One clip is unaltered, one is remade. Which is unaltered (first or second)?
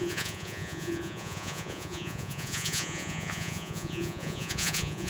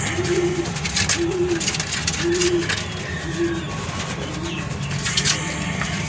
second